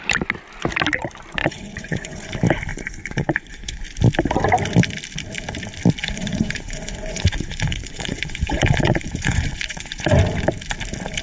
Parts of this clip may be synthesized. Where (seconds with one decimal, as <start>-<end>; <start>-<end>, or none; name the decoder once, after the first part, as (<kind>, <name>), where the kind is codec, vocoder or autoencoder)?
1.4-2.3 (vocoder, Vocos); 2.7-3.8; 6.0-10.1